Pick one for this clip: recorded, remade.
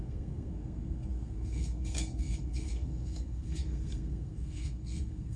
remade